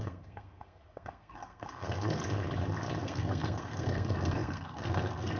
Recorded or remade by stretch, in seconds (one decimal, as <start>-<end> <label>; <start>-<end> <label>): 0.0-2.2 remade; 2.2-3.0 recorded; 3.0-5.4 remade